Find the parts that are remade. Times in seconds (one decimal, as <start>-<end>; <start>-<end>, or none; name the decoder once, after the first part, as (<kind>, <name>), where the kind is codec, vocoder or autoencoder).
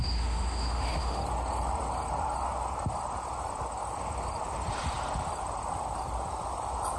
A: 0.0-1.2 (autoencoder, DAC-VAE)